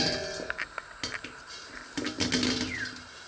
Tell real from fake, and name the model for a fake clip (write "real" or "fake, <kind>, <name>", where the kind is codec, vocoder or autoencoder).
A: real